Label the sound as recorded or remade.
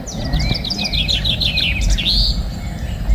recorded